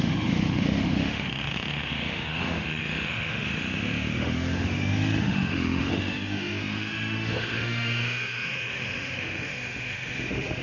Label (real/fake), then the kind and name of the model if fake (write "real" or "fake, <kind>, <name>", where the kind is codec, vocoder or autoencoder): fake, autoencoder, DAC-VAE